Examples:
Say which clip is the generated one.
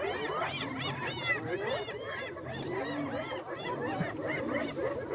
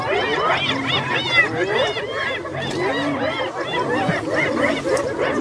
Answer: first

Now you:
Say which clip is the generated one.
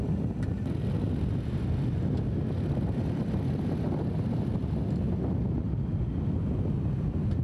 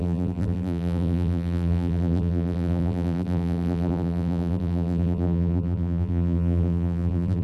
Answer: second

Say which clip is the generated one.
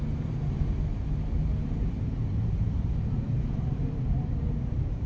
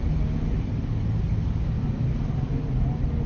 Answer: first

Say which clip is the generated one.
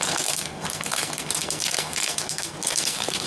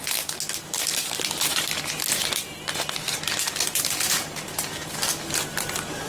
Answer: first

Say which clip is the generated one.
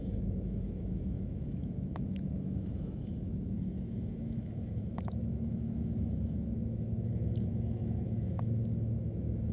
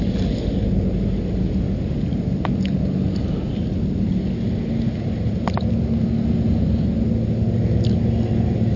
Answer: first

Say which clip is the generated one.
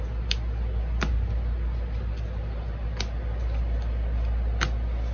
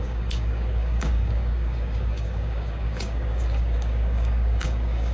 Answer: second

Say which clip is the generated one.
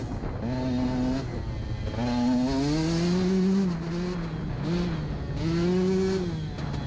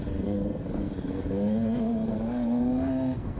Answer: second